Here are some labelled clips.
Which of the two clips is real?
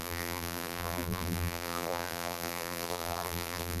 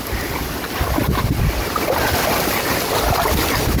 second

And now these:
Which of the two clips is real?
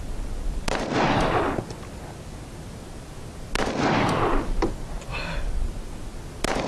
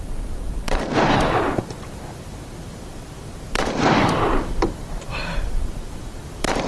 first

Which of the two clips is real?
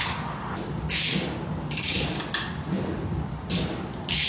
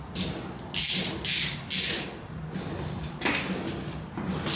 second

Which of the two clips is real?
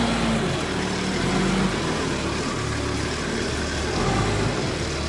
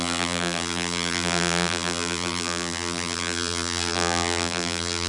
first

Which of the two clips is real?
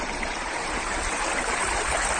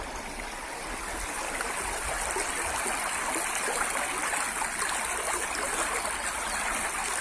second